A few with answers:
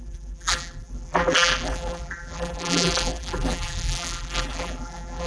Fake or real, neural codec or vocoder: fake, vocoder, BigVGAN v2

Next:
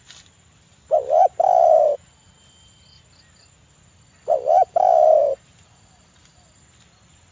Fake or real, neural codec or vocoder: fake, vocoder, BigVGAN v2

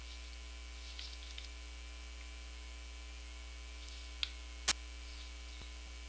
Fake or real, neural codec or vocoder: real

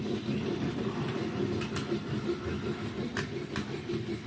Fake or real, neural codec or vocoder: real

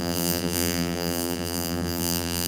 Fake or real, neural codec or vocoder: fake, vocoder, BigVGAN v2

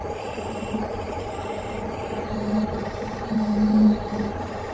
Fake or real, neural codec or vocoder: fake, vocoder, BigVGAN v2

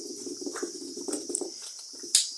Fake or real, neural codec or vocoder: real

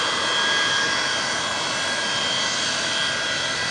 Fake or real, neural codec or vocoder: real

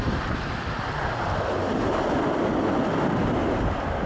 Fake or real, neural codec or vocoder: real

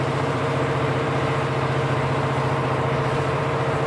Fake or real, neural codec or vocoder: fake, vocoder, BigVGAN v2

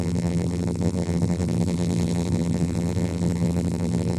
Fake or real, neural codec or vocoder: fake, vocoder, BigVGAN v2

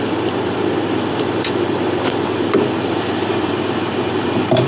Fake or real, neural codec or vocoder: fake, vocoder, BigVGAN v2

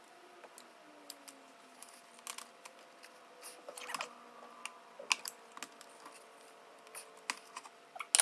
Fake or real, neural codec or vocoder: real